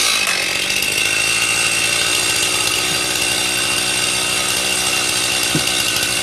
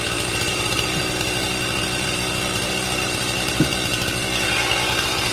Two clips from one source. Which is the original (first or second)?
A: first